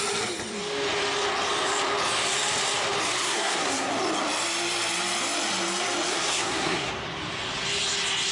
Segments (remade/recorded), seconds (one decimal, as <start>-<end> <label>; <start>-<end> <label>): 0.0-3.2 recorded; 3.2-3.9 remade; 3.9-6.1 recorded; 6.1-6.9 remade; 6.9-8.3 recorded

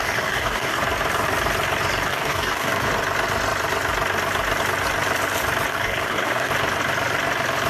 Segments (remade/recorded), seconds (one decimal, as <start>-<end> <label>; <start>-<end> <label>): 0.0-0.8 remade; 0.8-2.1 recorded; 2.1-2.9 remade; 2.9-5.7 recorded; 5.7-6.5 remade; 6.5-7.7 recorded

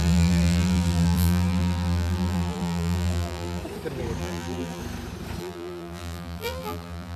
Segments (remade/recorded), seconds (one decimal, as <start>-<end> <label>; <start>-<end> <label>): 0.0-3.6 remade; 3.6-4.2 recorded; 4.2-4.8 remade; 4.8-5.4 recorded; 5.4-7.2 remade

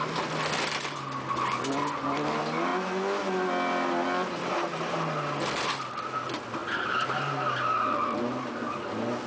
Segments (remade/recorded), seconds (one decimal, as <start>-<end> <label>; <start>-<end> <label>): 0.0-9.3 recorded

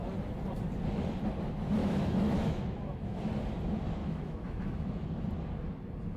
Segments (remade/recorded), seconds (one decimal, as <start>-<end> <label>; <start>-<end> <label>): 0.0-1.8 recorded; 1.8-3.3 remade; 3.3-4.0 recorded; 4.0-5.2 remade; 5.2-6.2 recorded

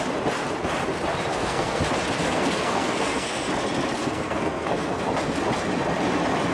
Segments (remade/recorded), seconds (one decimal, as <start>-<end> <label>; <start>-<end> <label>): 0.0-1.3 recorded; 1.3-1.8 remade; 1.8-2.2 recorded; 2.2-3.5 remade; 3.5-4.0 recorded; 4.0-5.0 remade; 5.0-6.5 recorded

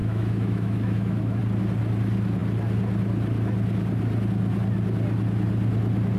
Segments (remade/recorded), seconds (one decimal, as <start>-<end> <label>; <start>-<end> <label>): 0.0-1.4 remade; 1.4-6.2 recorded